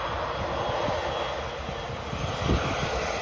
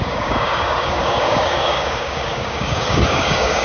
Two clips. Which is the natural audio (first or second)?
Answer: first